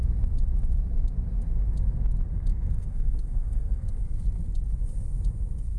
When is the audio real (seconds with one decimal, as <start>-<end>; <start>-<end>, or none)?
0.0-2.5; 3.9-5.8